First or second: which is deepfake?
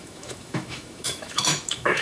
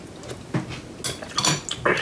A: first